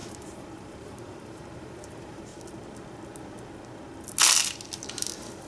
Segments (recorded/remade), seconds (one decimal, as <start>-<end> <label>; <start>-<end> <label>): 0.0-2.3 remade; 2.3-5.5 recorded